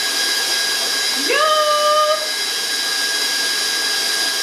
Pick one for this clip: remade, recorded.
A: recorded